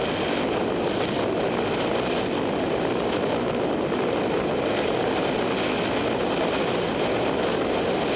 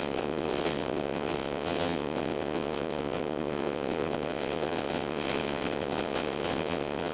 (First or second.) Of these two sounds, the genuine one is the first